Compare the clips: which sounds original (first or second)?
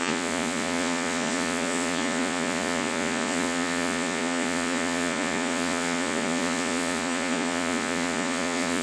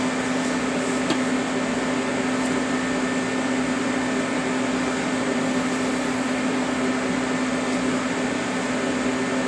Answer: second